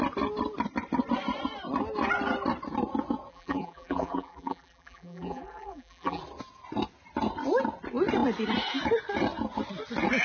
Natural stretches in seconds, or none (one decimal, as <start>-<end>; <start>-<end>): 0.0-3.3; 6.2-10.2